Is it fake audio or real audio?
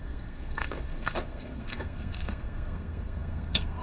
fake